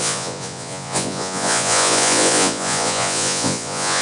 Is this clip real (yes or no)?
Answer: no